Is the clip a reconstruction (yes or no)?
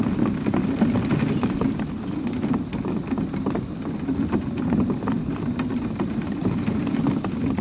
no